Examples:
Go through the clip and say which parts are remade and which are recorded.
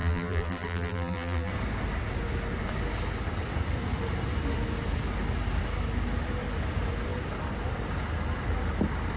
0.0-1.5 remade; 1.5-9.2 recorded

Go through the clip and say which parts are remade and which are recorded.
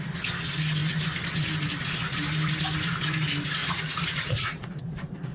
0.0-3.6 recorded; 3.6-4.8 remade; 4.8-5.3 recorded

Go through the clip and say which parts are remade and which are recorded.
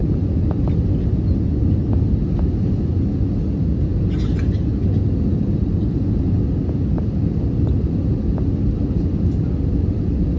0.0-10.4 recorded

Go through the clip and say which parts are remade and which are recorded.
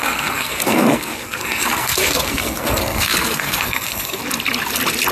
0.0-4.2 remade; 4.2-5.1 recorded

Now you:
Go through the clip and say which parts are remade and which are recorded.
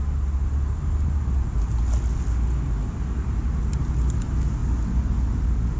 0.0-5.8 recorded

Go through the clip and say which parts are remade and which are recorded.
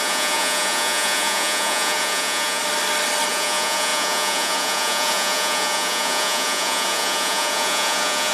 0.0-2.6 remade; 2.6-3.3 recorded; 3.3-8.3 remade